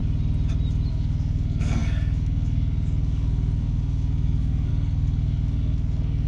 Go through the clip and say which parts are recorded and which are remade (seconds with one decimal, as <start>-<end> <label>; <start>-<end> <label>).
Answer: 0.0-0.9 recorded; 0.9-6.3 remade